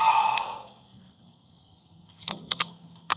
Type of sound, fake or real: fake